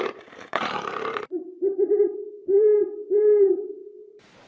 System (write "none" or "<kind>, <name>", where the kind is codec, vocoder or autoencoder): vocoder, BigVGAN v2